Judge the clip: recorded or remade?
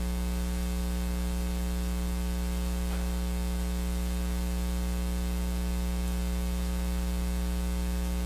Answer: recorded